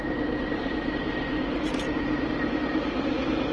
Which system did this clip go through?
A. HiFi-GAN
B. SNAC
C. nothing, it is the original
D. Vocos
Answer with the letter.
C